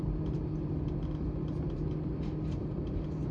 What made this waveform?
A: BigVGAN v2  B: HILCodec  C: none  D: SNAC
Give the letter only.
C